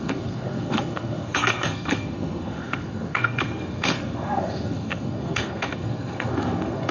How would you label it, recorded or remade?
remade